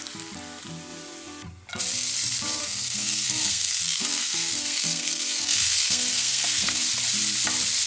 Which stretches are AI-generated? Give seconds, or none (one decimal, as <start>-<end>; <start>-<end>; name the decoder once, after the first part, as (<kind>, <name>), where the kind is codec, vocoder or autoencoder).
2.6-6.8 (codec, SNAC)